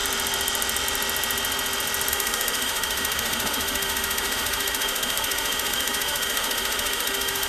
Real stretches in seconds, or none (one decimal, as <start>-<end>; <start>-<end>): 0.0-2.1